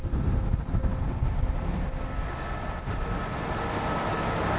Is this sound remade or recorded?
recorded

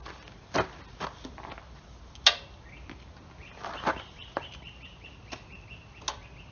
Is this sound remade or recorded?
recorded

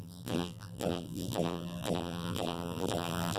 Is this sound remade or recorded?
remade